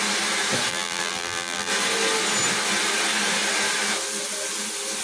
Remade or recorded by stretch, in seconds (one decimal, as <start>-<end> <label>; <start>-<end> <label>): 0.0-0.7 recorded; 0.7-1.7 remade; 1.7-5.0 recorded